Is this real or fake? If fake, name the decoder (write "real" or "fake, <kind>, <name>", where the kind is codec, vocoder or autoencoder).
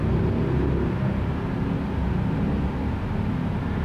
real